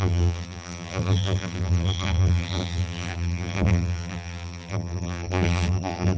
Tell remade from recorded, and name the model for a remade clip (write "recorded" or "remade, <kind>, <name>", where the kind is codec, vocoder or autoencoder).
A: remade, vocoder, BigVGAN v2